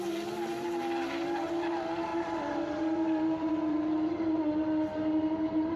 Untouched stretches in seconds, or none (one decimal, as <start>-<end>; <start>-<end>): 0.0-2.1